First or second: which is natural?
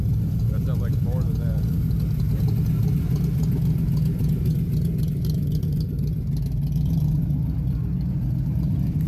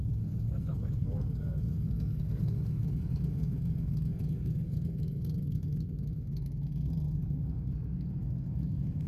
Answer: first